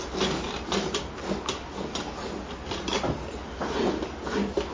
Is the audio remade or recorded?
recorded